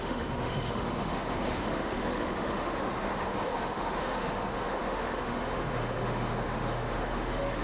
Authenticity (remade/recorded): remade